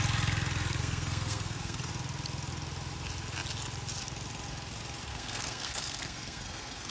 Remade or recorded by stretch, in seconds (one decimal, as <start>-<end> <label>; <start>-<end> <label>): 0.0-0.8 recorded; 0.8-1.9 remade; 1.9-5.1 recorded; 5.1-6.9 remade